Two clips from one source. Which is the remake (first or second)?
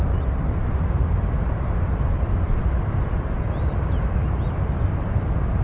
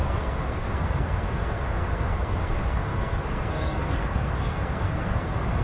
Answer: second